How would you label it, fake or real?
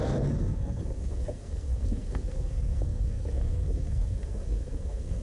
fake